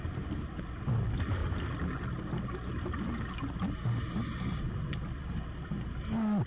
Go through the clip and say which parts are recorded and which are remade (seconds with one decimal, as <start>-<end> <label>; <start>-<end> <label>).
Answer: 0.0-1.4 remade; 1.4-4.5 recorded; 4.5-6.5 remade